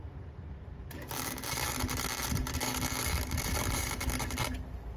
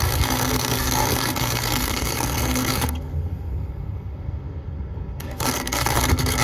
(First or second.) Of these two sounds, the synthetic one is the second